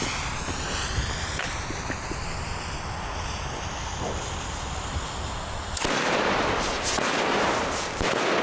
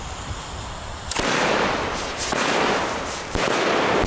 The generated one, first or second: second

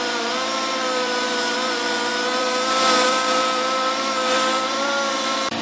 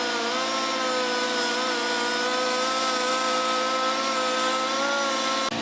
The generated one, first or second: first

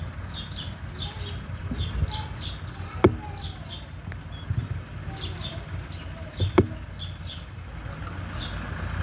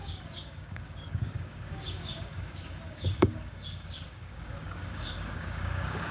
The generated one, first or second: second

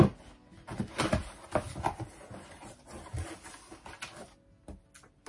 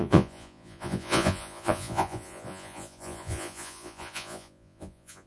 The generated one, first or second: second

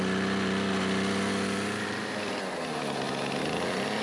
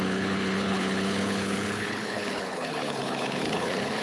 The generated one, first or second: second